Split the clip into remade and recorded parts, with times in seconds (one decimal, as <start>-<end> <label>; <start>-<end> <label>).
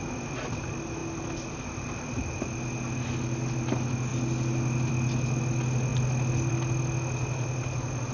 0.0-8.1 recorded